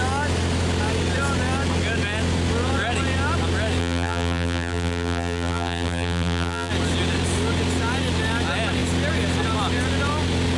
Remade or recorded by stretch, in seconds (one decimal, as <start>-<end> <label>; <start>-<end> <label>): 0.0-3.8 recorded; 3.8-6.7 remade; 6.7-10.6 recorded